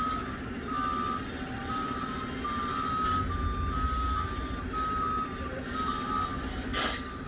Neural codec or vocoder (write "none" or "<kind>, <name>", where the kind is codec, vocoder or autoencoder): none